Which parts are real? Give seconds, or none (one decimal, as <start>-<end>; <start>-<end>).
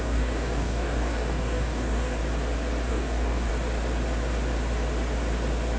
2.2-2.9; 3.5-5.8